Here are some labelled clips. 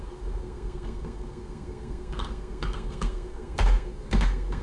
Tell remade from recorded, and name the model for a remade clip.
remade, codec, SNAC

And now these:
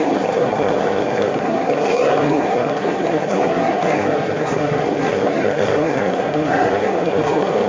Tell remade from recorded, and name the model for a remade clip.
remade, codec, SNAC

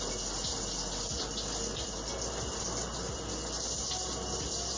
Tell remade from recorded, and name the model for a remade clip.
recorded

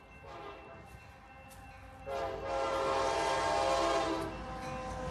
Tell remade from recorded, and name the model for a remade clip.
recorded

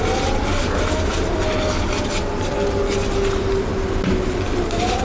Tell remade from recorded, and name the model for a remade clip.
recorded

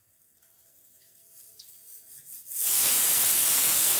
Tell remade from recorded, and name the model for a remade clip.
remade, codec, SNAC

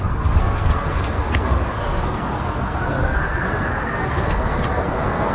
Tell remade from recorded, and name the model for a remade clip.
remade, codec, SNAC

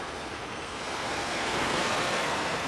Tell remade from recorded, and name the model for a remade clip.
remade, codec, SNAC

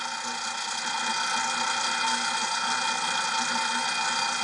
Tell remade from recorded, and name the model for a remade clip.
recorded